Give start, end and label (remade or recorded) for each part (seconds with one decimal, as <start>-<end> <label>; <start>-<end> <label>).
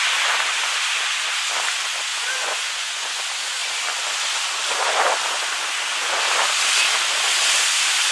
0.0-2.1 recorded; 2.1-3.2 remade; 3.2-8.1 recorded